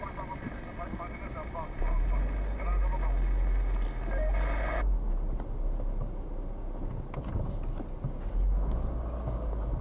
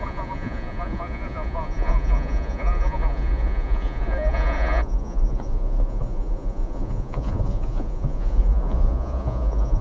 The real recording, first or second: first